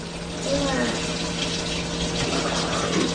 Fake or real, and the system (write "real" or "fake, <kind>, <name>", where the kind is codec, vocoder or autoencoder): real